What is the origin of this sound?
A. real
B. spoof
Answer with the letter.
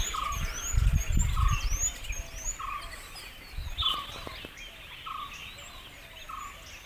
A